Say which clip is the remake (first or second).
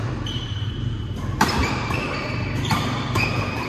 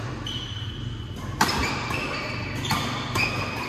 first